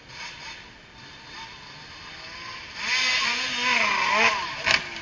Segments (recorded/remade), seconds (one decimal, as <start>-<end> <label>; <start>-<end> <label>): 0.0-5.0 recorded